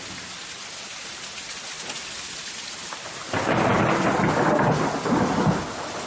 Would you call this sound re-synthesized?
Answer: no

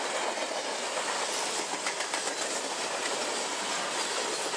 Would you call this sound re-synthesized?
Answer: no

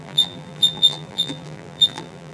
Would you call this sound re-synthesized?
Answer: yes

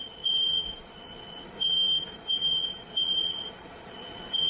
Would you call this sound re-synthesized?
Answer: yes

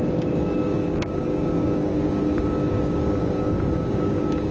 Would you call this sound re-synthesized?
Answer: yes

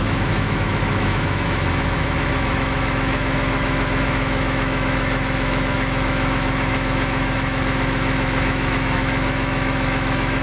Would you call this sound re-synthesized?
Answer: yes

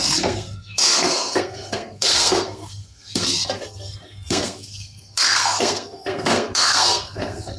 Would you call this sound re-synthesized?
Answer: yes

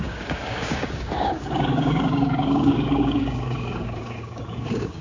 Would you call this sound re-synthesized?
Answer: yes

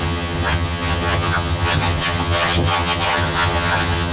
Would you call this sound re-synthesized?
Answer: yes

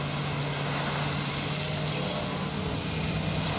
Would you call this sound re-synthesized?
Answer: no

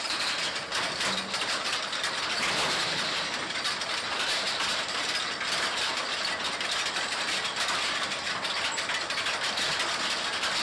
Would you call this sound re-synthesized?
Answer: yes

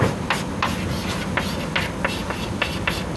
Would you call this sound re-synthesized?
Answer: no